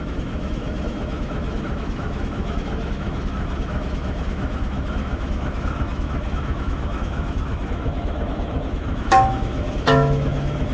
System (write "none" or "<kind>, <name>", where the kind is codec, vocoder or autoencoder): autoencoder, DAC-VAE